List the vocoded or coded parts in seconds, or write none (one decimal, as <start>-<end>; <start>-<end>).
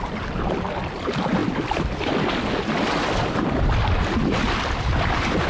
none